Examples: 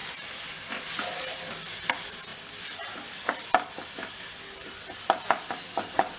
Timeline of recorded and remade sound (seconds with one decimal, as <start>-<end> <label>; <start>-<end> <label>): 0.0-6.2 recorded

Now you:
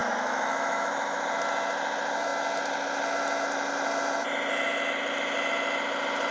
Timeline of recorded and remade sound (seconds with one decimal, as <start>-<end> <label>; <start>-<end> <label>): 0.0-1.2 remade; 1.2-6.3 recorded

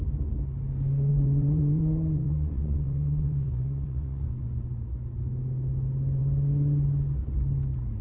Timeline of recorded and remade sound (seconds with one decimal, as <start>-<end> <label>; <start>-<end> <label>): 0.0-1.1 recorded; 1.1-4.8 remade; 4.8-8.0 recorded

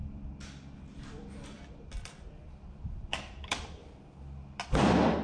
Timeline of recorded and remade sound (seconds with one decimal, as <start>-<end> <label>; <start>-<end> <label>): 0.0-3.8 remade; 3.8-4.6 recorded; 4.6-5.2 remade

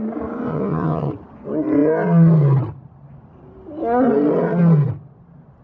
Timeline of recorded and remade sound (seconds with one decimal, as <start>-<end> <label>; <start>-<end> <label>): 0.0-0.5 recorded; 0.5-1.1 remade; 1.1-5.6 recorded

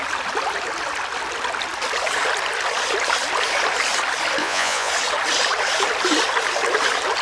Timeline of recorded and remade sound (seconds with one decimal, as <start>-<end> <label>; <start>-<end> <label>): 0.0-4.4 recorded; 4.4-4.9 remade; 4.9-7.2 recorded

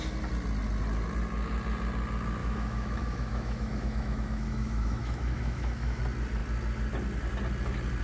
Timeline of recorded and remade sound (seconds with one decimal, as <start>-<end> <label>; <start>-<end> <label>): 0.0-2.4 recorded; 2.4-6.0 remade; 6.0-8.0 recorded